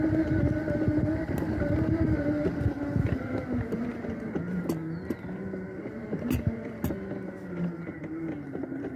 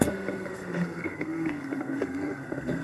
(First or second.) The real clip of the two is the first